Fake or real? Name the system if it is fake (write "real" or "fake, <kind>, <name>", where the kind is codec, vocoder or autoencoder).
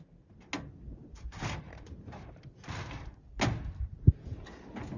real